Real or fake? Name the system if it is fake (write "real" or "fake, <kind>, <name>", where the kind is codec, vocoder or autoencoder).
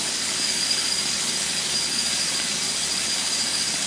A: fake, codec, DAC